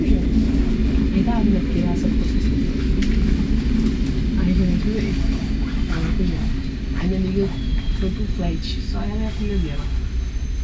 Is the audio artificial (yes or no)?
no